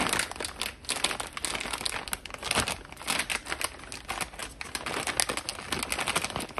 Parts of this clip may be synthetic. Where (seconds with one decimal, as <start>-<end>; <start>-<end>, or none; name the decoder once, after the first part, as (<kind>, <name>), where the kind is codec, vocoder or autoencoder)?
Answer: none